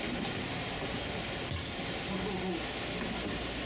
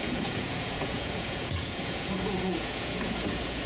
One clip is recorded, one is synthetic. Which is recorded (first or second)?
first